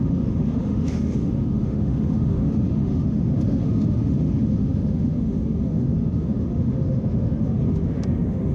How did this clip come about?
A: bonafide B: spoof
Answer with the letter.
B